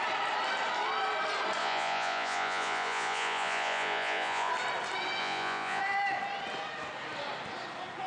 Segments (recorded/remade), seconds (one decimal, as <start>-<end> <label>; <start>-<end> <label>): 0.0-1.6 recorded; 1.6-4.5 remade; 4.5-5.2 recorded; 5.2-5.8 remade; 5.8-8.1 recorded